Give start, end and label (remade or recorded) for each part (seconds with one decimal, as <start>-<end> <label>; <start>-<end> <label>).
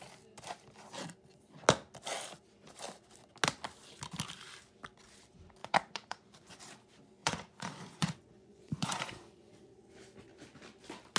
0.0-5.6 recorded; 5.6-6.6 remade; 6.6-7.2 recorded; 7.2-9.5 remade; 9.5-11.2 recorded